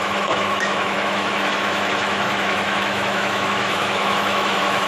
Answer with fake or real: fake